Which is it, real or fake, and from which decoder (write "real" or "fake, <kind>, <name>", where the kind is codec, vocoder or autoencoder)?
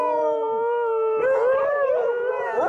fake, vocoder, BigVGAN v2